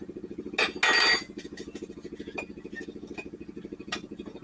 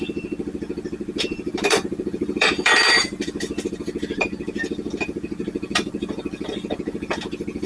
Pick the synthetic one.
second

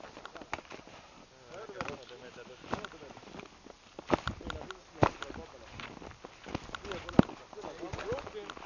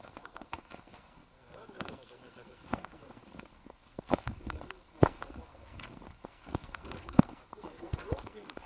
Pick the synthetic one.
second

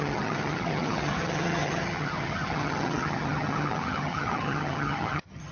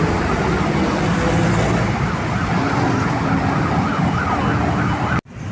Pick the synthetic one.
first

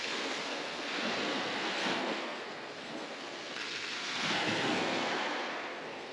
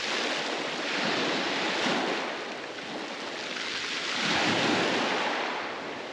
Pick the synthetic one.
first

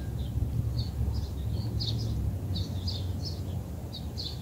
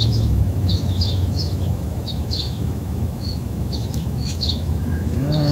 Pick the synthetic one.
second